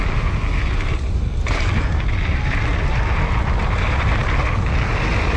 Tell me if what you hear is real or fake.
real